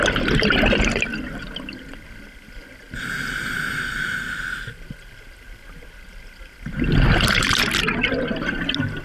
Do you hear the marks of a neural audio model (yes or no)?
no